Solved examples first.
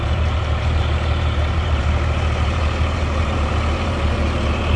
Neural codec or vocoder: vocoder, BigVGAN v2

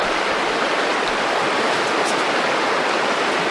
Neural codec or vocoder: vocoder, BigVGAN v2